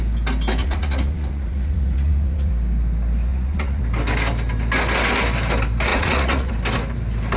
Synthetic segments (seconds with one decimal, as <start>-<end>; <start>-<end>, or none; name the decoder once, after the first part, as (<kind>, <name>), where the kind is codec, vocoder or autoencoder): 0.6-2.5 (vocoder, Vocos); 3.3-3.8; 5.9-6.5